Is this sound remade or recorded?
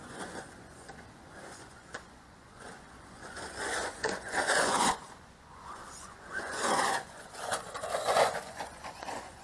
remade